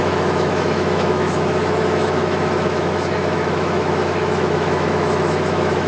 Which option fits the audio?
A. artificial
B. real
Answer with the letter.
A